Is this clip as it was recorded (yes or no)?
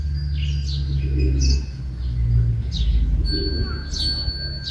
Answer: yes